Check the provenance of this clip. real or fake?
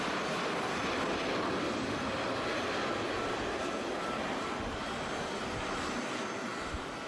real